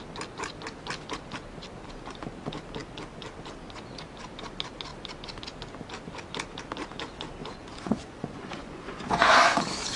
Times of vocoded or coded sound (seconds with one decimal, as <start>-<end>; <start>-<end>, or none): 7.4-9.6